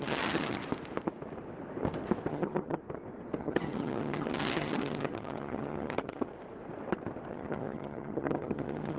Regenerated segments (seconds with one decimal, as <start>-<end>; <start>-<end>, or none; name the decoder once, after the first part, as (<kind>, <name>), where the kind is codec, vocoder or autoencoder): 0.0-0.6 (vocoder, HiFi-GAN); 2.3-2.8; 3.4-6.3; 7.3-9.0